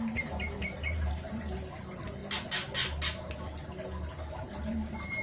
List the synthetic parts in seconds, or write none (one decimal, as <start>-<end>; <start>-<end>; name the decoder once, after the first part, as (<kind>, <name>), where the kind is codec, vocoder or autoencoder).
0.0-2.2 (vocoder, BigVGAN v2); 4.4-5.2